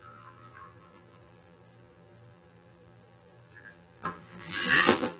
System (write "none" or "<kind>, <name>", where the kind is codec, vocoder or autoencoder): vocoder, BigVGAN v2